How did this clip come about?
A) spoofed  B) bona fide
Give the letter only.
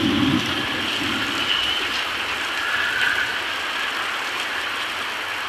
B